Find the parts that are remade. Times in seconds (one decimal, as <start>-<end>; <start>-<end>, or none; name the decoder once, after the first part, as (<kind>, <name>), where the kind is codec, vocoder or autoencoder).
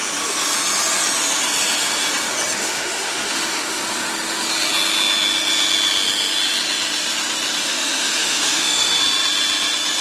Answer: 2.6-3.8 (autoencoder, DAC-VAE); 7.6-9.0